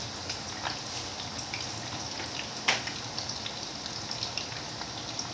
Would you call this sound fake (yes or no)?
no